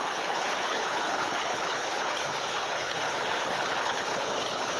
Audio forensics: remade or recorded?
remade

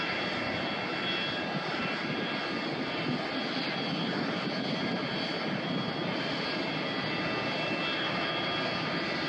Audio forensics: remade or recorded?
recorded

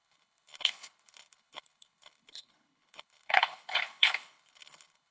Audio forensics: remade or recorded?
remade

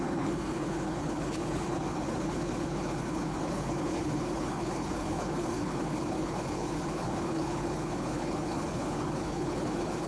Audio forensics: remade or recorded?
remade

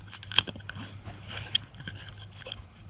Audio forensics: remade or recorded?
remade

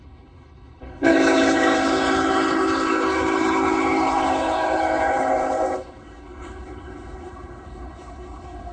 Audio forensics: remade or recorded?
remade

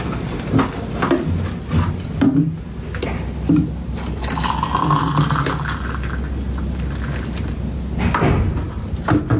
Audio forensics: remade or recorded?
recorded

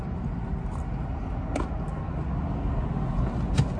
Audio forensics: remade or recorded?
recorded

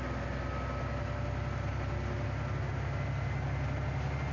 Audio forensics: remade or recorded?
recorded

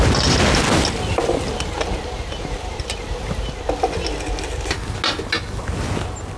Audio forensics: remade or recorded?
recorded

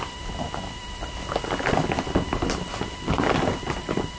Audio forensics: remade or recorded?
recorded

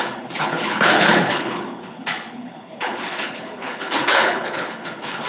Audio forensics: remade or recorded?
remade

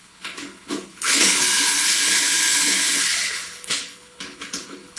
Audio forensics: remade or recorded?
remade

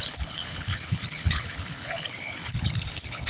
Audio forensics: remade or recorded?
remade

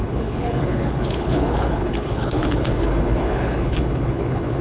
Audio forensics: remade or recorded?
remade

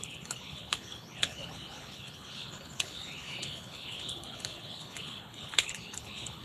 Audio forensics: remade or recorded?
remade